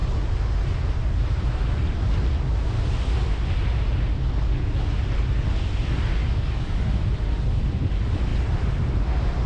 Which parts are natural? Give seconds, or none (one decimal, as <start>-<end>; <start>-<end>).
0.0-6.2; 6.9-9.5